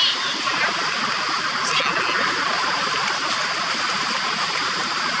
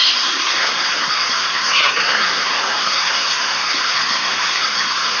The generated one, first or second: second